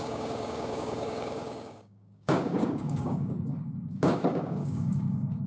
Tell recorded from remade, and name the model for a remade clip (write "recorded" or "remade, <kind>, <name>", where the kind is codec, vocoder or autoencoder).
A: remade, codec, DAC